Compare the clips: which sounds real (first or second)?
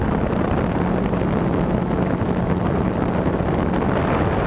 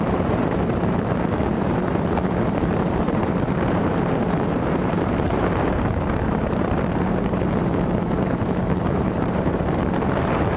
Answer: first